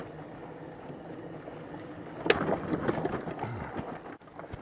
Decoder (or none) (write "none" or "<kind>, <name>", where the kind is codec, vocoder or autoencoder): none